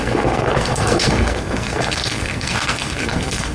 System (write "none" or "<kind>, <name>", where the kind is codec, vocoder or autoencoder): codec, SNAC